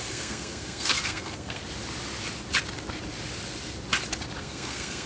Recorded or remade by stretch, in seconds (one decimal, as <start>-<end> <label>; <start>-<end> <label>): 0.0-1.6 remade; 1.6-4.4 recorded; 4.4-5.1 remade